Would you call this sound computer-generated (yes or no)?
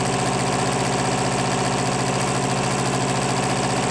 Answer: no